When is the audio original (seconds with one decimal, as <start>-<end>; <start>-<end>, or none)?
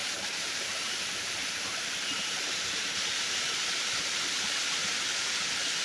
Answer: 3.4-5.8